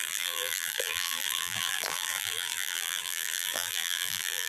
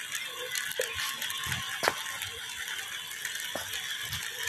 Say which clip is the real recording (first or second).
second